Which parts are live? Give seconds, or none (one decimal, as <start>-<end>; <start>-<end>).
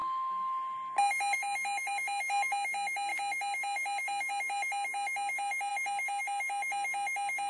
0.0-7.5